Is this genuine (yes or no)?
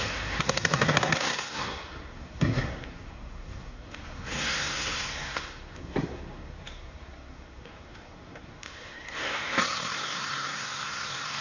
no